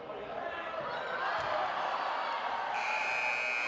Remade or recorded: recorded